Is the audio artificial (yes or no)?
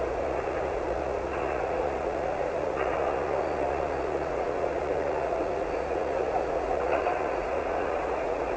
yes